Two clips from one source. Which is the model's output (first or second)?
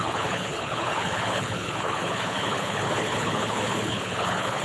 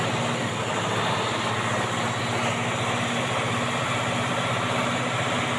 first